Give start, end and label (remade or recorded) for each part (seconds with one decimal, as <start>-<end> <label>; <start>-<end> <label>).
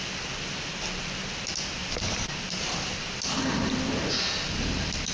0.0-1.8 recorded; 1.8-3.2 remade; 3.2-5.1 recorded